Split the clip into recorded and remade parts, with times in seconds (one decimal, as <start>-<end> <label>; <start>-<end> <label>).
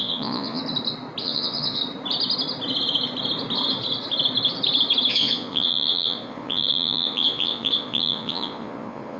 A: 0.0-0.6 remade; 0.6-1.2 recorded; 1.2-1.8 remade; 1.8-5.1 recorded; 5.1-9.2 remade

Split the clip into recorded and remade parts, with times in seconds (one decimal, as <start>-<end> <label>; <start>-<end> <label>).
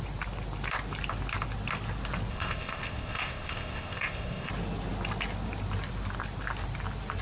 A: 0.0-2.3 recorded; 2.3-4.5 remade; 4.5-7.2 recorded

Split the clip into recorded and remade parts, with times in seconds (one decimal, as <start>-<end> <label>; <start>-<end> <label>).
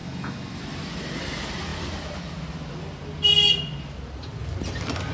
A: 0.0-0.6 remade; 0.6-5.1 recorded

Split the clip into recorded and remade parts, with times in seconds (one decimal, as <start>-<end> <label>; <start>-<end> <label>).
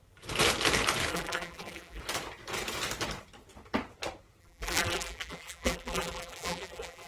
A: 0.0-1.1 recorded; 1.1-2.0 remade; 2.0-4.4 recorded; 4.4-7.1 remade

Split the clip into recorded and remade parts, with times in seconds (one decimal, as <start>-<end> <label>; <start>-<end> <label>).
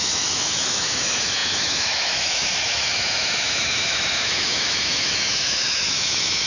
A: 0.0-6.5 remade